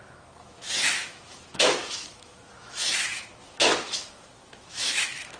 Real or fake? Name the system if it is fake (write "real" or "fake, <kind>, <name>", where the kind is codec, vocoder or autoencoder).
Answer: fake, autoencoder, DAC-VAE